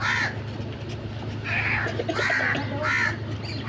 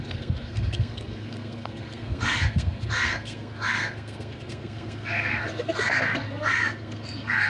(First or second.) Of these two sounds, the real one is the first